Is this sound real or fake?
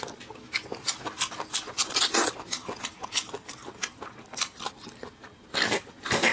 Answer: real